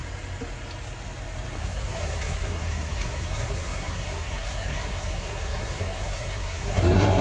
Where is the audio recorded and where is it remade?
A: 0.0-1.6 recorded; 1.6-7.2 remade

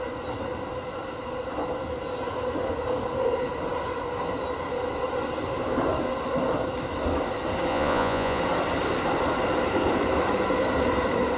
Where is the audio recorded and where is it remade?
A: 0.0-7.7 recorded; 7.7-8.4 remade; 8.4-11.4 recorded

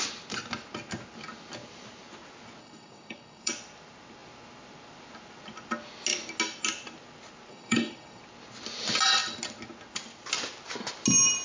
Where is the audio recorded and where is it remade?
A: 0.0-2.6 recorded; 2.6-3.5 remade; 3.5-7.5 recorded; 7.5-8.2 remade; 8.2-11.4 recorded

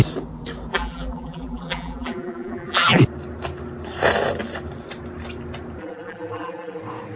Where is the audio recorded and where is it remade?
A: 0.0-0.7 recorded; 0.7-3.0 remade; 3.0-5.8 recorded; 5.8-6.8 remade; 6.8-7.2 recorded

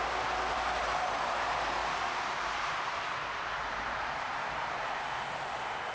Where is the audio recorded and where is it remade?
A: 0.0-1.8 recorded; 1.8-5.0 remade; 5.0-5.9 recorded